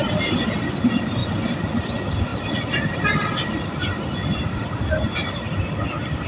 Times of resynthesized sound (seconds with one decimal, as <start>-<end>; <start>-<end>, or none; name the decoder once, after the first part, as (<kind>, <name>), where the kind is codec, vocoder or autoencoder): 1.2-1.8 (vocoder, BigVGAN v2)